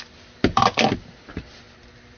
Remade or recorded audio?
recorded